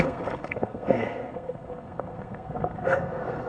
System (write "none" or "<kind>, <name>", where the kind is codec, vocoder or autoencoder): codec, SNAC